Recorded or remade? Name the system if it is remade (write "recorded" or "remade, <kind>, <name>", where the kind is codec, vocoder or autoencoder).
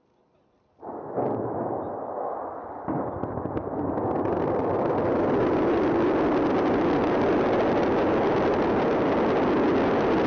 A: recorded